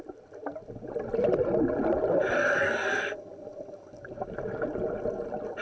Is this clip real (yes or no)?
yes